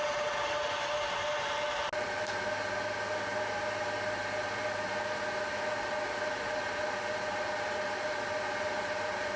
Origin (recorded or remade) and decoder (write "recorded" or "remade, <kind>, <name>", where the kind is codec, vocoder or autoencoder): recorded